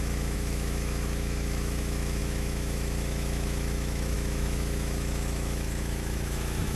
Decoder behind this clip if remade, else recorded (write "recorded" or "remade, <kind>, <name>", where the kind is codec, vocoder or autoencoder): remade, autoencoder, DAC-VAE